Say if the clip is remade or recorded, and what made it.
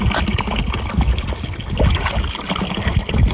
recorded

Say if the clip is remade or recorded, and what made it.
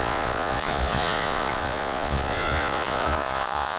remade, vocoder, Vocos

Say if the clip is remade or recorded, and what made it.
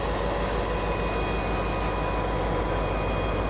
recorded